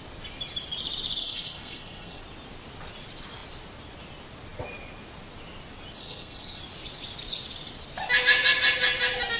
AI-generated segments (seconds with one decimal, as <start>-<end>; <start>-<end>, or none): 1.2-2.2; 6.0-6.6